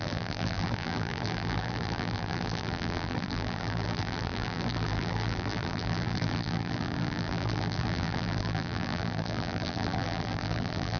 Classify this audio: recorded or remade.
remade